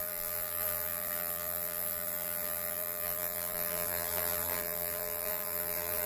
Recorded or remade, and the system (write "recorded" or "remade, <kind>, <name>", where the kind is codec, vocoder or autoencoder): remade, vocoder, BigVGAN v2